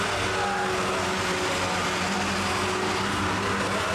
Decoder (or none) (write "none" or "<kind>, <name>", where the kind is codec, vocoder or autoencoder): none